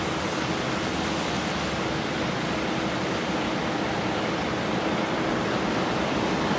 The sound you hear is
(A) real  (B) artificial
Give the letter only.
A